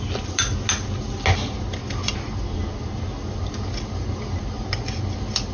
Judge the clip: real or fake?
real